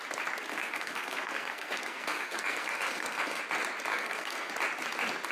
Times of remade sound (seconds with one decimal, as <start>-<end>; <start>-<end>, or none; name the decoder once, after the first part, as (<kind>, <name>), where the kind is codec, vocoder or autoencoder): 0.5-3.4 (codec, SNAC); 3.9-4.5